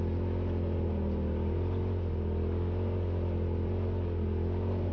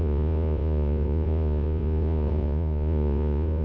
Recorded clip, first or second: first